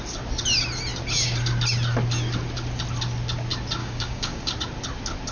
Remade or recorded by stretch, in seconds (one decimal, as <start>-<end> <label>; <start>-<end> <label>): 0.0-3.8 recorded; 3.8-4.5 remade; 4.5-5.3 recorded